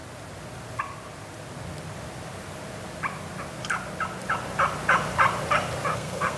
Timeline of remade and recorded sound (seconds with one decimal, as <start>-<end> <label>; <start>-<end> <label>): 0.0-5.9 recorded; 5.9-6.4 remade